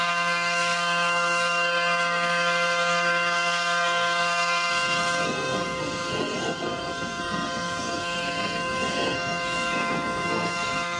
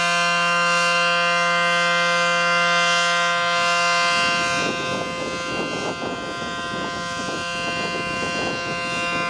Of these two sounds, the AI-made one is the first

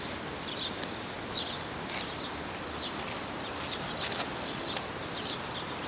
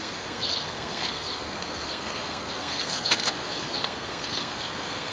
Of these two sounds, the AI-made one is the second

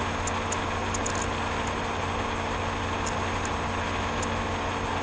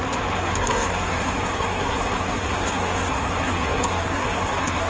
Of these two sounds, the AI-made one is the second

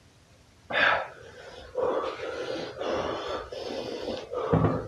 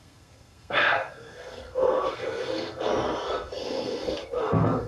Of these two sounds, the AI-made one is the second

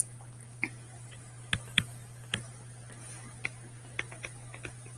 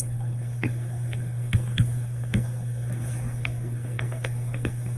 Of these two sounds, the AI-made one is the second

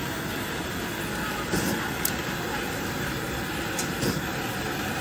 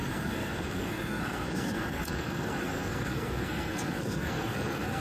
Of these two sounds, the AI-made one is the second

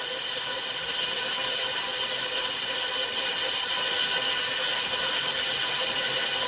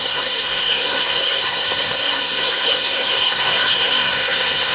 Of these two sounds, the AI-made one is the second